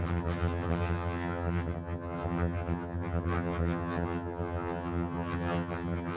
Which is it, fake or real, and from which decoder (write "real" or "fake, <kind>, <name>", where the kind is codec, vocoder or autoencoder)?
fake, vocoder, HiFi-GAN